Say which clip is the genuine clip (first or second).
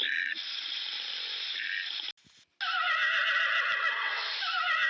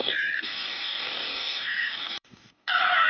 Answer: first